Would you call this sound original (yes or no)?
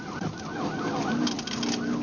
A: yes